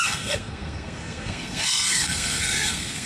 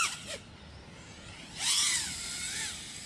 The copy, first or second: first